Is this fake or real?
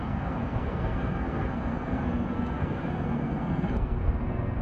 fake